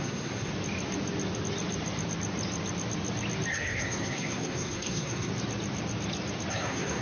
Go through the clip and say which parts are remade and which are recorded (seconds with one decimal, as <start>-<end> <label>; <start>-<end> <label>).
0.0-0.5 remade; 0.5-3.5 recorded; 3.5-5.3 remade; 5.3-6.5 recorded; 6.5-7.0 remade